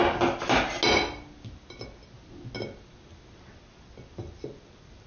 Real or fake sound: real